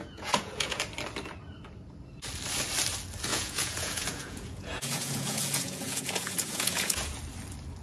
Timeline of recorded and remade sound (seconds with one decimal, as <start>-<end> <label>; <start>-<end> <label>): 0.0-0.8 remade; 0.8-3.3 recorded; 3.3-7.2 remade; 7.2-7.8 recorded